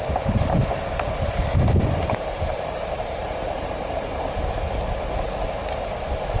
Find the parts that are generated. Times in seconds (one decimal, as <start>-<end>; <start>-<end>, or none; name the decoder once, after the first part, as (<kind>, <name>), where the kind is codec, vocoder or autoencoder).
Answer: 2.5-4.2 (vocoder, BigVGAN v2)